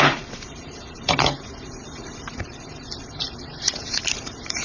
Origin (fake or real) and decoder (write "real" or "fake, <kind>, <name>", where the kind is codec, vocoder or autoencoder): fake, vocoder, BigVGAN v2